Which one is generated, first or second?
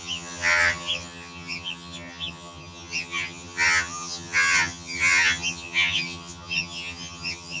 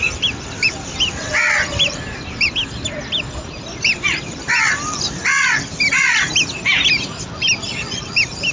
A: first